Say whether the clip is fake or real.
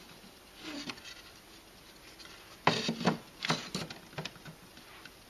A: real